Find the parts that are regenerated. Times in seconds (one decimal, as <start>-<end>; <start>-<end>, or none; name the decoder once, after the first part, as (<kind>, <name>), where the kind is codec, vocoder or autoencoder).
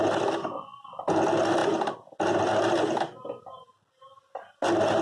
none